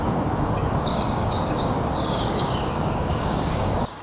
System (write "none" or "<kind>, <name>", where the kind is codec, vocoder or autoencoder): codec, DAC